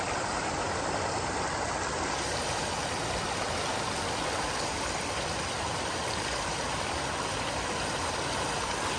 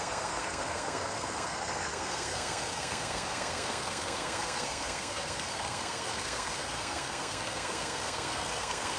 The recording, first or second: first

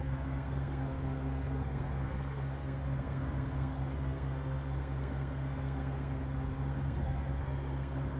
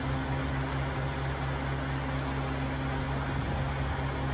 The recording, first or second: second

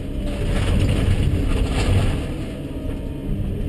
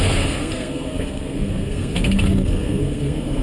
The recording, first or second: first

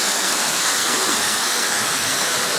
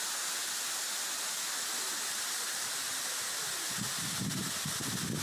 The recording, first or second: second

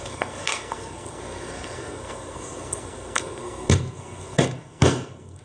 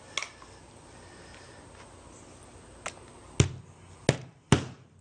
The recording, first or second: second